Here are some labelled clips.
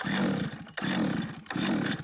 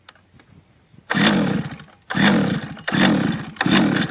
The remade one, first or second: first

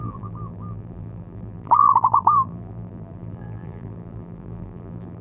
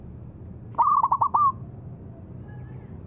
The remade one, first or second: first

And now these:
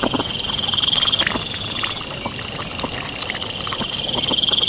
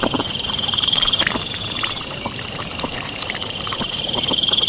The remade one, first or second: second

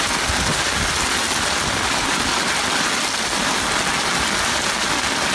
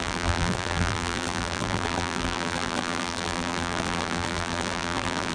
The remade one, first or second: second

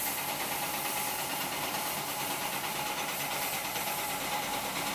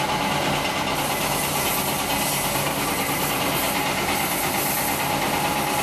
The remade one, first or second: first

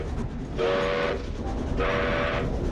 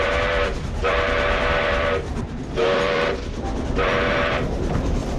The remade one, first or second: second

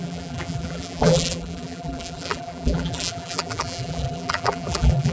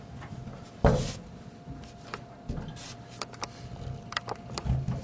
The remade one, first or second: first